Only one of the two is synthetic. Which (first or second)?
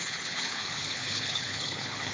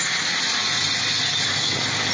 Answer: first